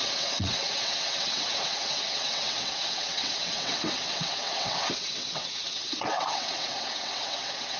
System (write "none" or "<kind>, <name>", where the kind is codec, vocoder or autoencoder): vocoder, WaveNeXt